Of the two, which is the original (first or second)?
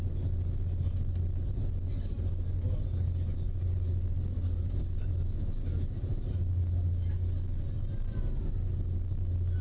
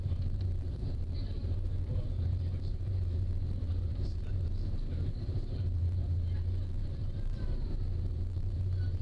first